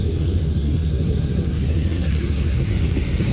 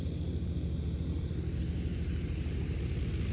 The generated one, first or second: first